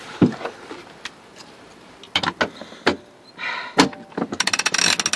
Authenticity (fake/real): real